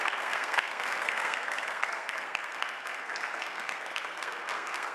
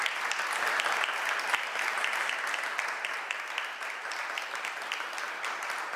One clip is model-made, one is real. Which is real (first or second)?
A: second